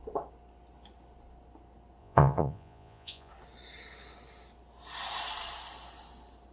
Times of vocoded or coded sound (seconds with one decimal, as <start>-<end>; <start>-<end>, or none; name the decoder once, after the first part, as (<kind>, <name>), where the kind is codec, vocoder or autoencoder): 2.0-3.3 (vocoder, Vocos)